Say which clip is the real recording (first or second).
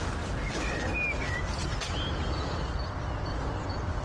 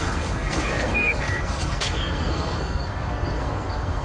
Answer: first